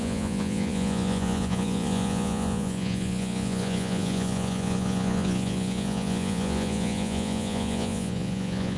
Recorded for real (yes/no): no